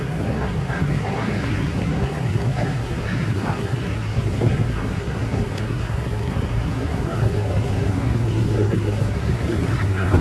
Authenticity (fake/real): fake